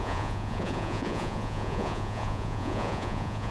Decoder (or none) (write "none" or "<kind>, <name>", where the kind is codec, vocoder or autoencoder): vocoder, Vocos